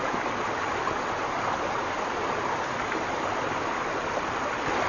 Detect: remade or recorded recorded